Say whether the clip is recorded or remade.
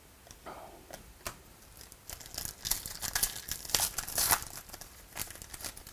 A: recorded